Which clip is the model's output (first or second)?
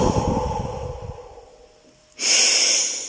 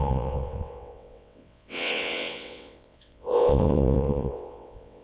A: second